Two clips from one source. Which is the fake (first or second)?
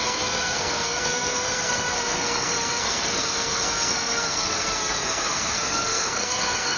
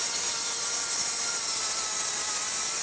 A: first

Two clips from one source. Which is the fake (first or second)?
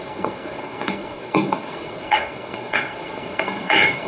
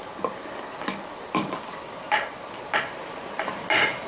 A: first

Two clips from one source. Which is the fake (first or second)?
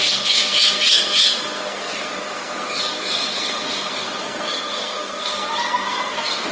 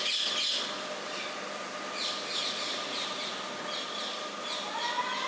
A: first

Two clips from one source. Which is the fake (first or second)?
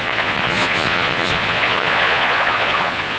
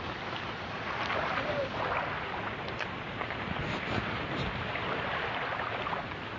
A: first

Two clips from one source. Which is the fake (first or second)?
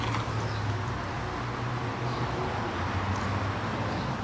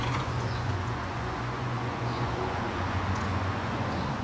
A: second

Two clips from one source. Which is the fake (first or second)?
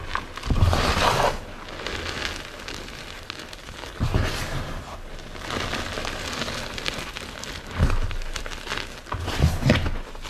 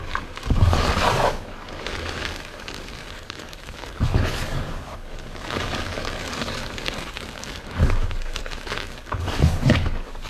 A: second